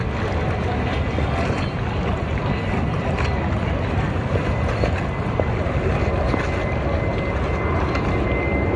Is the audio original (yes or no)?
yes